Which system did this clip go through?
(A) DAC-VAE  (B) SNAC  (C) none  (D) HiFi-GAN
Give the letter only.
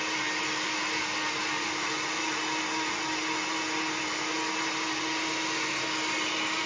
C